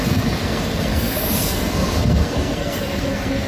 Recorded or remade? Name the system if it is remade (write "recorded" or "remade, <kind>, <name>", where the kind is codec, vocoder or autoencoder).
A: remade, codec, SNAC